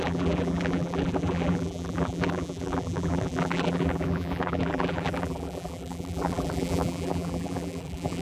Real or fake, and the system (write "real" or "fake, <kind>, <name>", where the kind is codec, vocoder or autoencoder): fake, vocoder, BigVGAN v2